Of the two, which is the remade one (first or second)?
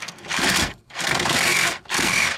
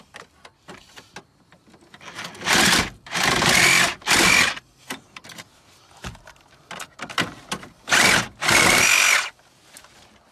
first